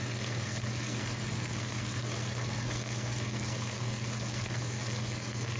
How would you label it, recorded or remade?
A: remade